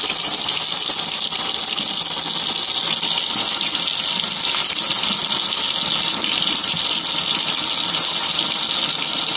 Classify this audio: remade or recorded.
recorded